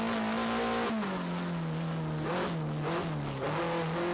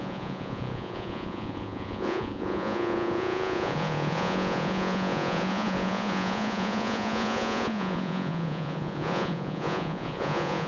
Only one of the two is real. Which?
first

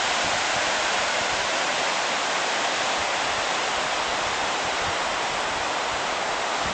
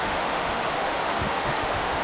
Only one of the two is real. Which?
first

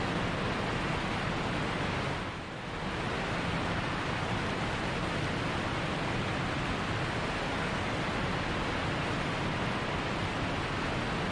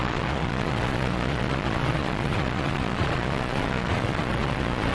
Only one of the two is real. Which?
first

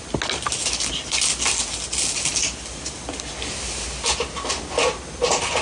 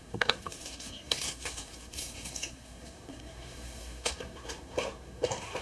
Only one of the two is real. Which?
first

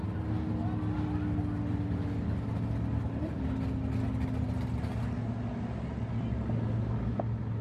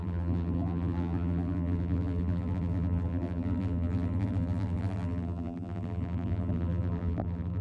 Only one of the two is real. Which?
first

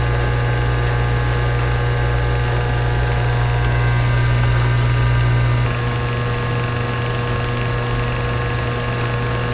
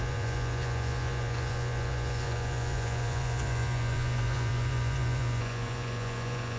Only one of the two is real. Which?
first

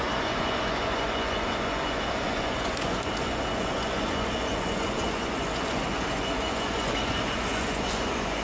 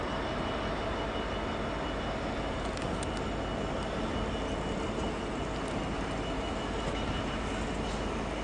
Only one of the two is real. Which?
second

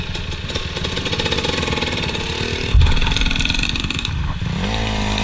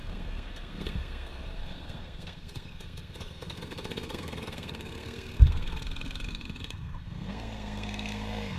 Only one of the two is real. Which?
first